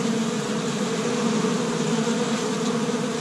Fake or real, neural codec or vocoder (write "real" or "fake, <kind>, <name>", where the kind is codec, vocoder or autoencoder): real